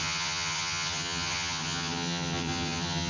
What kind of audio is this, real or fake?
fake